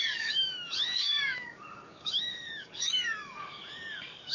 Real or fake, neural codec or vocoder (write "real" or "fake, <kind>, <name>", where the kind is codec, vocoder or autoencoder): fake, codec, DAC